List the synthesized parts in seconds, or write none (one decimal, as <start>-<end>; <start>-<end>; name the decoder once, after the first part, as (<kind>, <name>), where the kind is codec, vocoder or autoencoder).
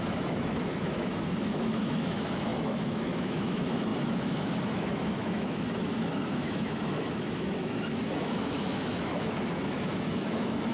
0.0-10.7 (autoencoder, DAC-VAE)